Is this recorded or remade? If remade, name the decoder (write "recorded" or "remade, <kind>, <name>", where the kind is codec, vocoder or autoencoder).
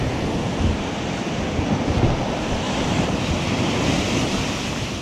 recorded